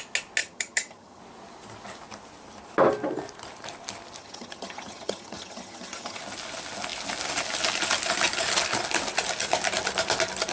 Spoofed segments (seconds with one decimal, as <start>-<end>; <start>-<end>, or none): 0.4-1.2; 4.2-6.2